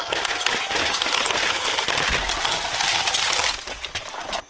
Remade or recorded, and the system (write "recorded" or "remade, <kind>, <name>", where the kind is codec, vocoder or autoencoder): recorded